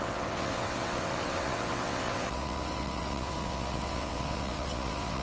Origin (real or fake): fake